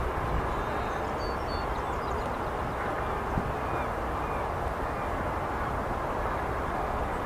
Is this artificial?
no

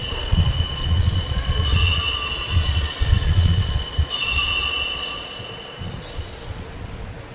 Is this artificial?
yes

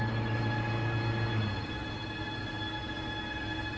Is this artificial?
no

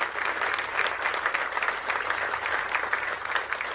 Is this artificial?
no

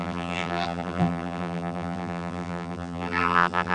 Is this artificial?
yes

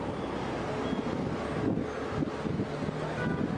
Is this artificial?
no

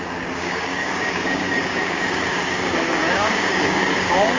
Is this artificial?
yes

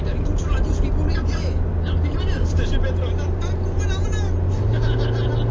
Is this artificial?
no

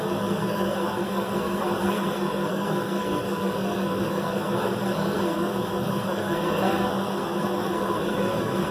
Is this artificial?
yes